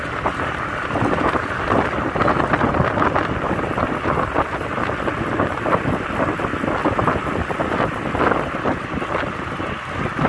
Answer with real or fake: real